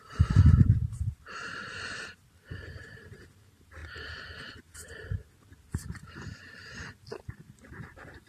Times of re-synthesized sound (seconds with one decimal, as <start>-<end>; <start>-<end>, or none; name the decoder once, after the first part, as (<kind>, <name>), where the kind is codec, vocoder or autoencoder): 0.0-3.8 (vocoder, BigVGAN v2); 4.5-6.6; 7.3-8.3